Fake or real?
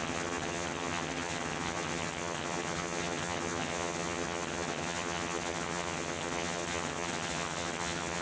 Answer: fake